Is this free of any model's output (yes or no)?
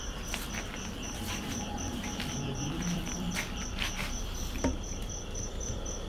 no